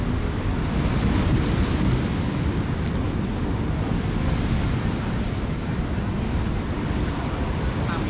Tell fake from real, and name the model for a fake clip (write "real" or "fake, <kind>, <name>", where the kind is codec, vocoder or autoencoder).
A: real